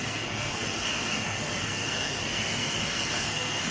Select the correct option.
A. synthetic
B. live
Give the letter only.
A